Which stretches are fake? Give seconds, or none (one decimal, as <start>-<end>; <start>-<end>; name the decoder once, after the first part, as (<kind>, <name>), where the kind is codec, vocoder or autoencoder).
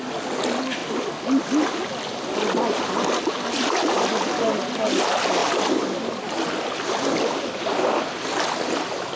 none